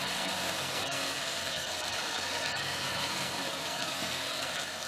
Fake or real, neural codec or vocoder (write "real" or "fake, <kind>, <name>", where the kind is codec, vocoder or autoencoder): fake, codec, SNAC